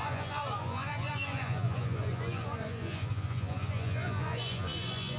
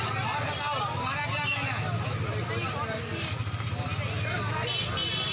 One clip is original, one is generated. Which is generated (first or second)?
first